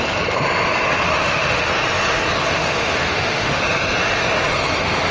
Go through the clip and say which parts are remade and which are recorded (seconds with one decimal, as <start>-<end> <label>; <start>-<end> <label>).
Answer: 0.0-1.1 recorded; 1.1-1.7 remade; 1.7-2.6 recorded; 2.6-3.6 remade; 3.6-5.1 recorded